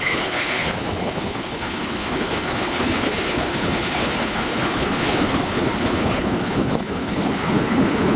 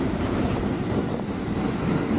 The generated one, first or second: first